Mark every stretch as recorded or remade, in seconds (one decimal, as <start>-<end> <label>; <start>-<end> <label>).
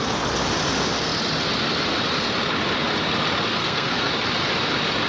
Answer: 0.0-3.6 recorded; 3.6-4.1 remade; 4.1-5.1 recorded